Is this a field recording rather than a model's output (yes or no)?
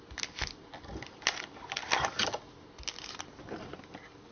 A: yes